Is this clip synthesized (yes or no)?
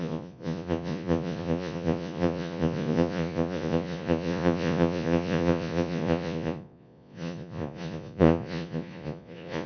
yes